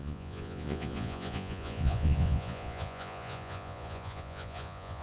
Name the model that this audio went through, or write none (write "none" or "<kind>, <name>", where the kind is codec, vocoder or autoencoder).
vocoder, Vocos